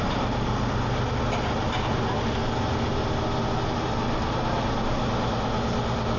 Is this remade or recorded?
recorded